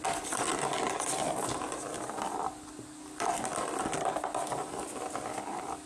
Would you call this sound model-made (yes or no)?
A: no